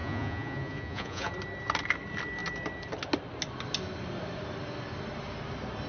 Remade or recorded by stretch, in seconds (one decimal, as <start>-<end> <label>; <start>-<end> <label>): 0.0-1.3 remade; 1.3-5.9 recorded